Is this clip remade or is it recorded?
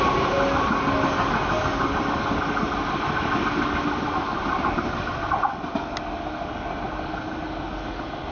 recorded